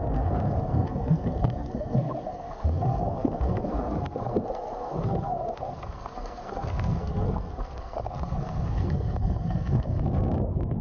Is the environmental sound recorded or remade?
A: remade